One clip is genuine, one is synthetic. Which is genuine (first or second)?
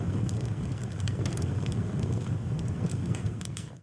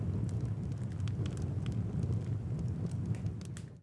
second